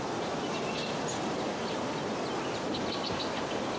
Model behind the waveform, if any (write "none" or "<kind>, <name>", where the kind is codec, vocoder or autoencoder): none